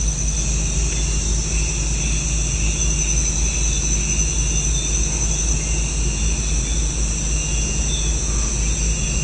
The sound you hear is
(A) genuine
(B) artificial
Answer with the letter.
A